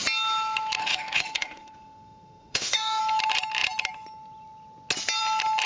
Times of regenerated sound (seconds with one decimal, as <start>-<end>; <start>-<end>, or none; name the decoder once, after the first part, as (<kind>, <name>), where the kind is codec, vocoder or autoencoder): 0.8-3.0 (autoencoder, DAC-VAE)